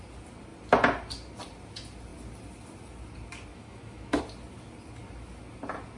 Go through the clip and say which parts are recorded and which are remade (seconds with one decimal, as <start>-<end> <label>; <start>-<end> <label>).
0.0-3.5 recorded; 3.5-4.2 remade; 4.2-6.0 recorded